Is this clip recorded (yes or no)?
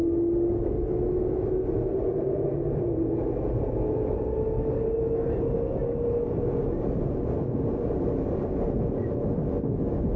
yes